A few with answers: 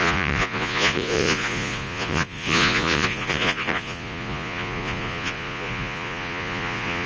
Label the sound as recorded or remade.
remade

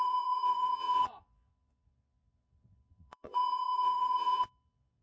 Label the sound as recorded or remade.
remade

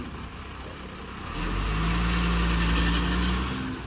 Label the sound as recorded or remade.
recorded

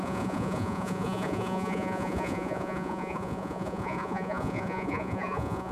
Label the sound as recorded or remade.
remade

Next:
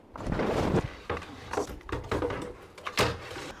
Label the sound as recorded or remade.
recorded